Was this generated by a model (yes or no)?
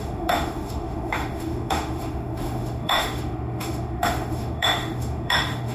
yes